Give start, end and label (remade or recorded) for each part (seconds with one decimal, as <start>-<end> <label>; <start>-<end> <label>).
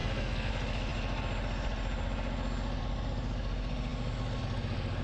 0.0-0.5 remade; 0.5-5.0 recorded